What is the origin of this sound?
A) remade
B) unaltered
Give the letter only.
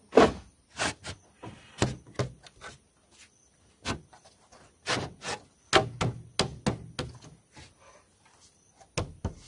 B